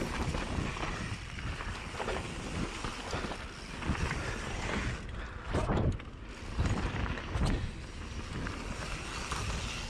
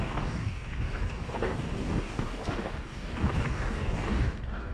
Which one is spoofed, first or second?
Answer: second